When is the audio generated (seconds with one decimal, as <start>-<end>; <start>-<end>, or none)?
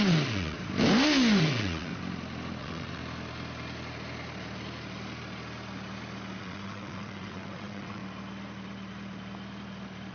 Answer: 0.0-0.6; 1.4-1.9; 2.6-3.0; 6.4-8.0